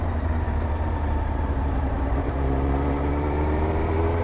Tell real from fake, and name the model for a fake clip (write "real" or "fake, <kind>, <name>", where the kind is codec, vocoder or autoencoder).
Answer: fake, vocoder, BigVGAN v2